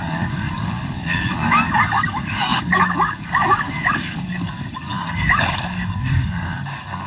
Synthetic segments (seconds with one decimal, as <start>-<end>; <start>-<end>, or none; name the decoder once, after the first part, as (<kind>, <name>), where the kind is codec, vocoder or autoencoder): 0.0-7.1 (codec, DAC)